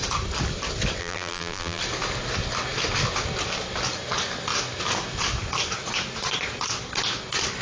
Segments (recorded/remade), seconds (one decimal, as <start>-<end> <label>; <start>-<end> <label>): 0.0-1.0 recorded; 1.0-1.8 remade; 1.8-7.6 recorded